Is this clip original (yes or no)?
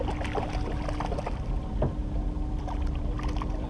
yes